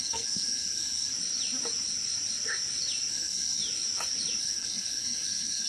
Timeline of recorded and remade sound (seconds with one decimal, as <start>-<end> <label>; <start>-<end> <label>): 0.0-1.1 remade; 1.1-3.1 recorded; 3.1-3.6 remade; 3.6-4.4 recorded; 4.4-5.7 remade